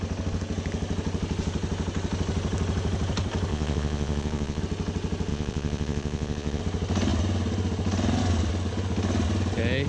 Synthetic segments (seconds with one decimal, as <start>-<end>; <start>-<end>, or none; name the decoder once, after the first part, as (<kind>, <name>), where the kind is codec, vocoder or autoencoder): 3.5-4.6 (vocoder, Vocos); 5.3-6.6